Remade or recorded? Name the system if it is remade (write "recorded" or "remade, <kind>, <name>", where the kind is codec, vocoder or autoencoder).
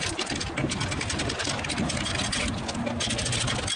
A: recorded